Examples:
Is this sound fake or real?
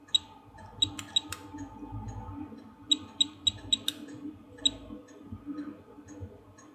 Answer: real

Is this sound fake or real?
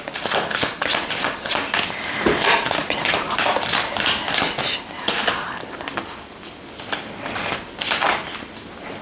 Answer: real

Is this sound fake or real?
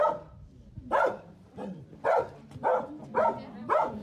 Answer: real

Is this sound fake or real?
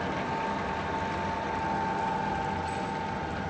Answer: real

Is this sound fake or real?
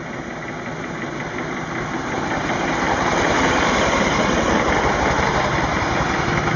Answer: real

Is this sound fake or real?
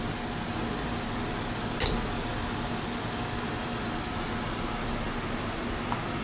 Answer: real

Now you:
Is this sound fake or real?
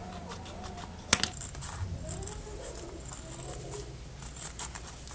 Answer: real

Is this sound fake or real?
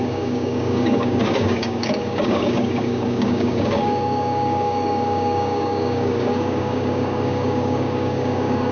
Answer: fake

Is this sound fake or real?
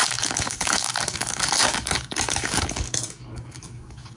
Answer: fake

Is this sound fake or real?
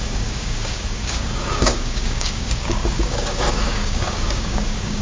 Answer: fake